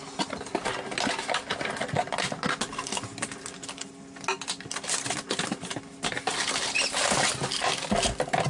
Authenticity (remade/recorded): recorded